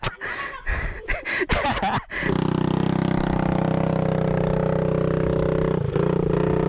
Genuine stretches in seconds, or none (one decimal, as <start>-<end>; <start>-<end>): 0.0-6.7